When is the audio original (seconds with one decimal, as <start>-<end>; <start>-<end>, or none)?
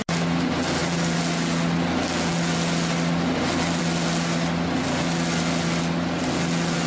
0.0-6.9